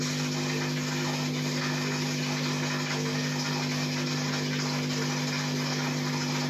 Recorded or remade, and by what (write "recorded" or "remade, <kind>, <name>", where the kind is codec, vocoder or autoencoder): recorded